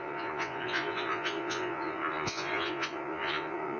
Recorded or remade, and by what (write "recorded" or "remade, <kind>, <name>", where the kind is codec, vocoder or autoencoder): remade, vocoder, Vocos